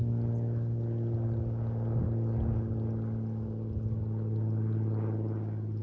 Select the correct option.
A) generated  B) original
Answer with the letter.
B